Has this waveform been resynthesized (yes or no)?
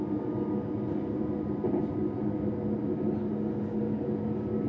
no